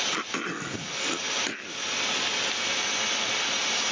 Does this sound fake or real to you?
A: real